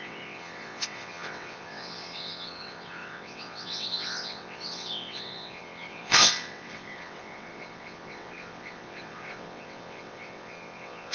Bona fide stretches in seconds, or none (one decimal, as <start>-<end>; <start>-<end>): none